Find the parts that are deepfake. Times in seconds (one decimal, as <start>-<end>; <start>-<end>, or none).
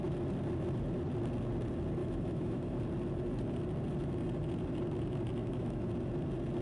2.0-2.8; 5.4-5.9